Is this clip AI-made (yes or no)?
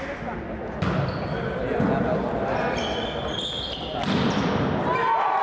no